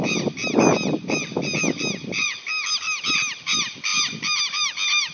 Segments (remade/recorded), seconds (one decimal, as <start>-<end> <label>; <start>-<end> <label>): 0.0-5.1 recorded